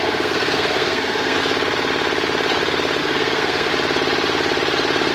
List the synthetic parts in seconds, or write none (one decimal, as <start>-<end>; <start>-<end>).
0.0-1.4; 3.0-3.7